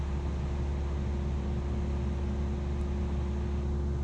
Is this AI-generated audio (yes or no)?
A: no